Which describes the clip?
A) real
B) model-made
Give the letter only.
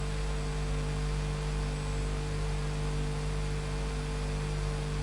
A